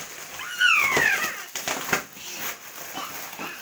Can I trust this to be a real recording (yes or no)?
yes